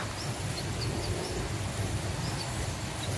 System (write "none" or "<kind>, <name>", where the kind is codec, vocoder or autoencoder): none